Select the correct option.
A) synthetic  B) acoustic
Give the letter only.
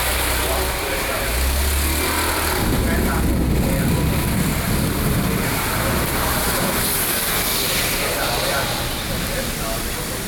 B